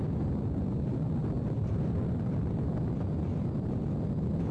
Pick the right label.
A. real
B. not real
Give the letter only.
A